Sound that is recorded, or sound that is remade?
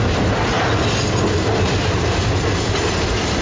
recorded